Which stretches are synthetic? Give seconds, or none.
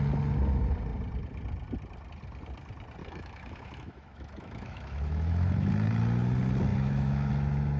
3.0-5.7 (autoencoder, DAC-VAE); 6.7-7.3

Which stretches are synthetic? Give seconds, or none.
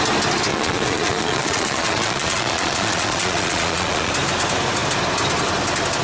0.5-4.1 (vocoder, Vocos)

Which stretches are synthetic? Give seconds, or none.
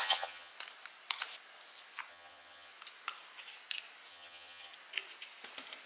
0.0-0.5 (vocoder, HiFi-GAN); 2.1-2.7; 4.1-4.7